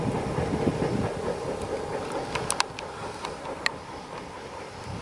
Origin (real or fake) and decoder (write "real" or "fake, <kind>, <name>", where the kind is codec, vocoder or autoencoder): fake, vocoder, BigVGAN v2